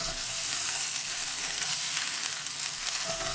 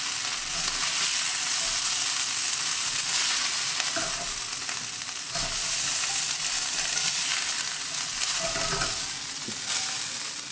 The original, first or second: second